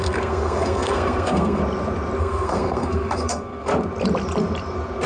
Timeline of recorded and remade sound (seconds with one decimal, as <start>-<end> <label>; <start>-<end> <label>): 0.0-1.6 remade; 1.6-2.2 recorded; 2.2-3.7 remade; 3.7-5.1 recorded